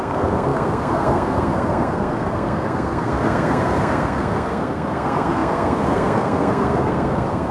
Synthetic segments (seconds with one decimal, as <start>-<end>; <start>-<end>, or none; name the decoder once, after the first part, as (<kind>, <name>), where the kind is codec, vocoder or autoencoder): 0.0-7.5 (codec, SNAC)